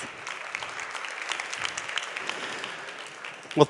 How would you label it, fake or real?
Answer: real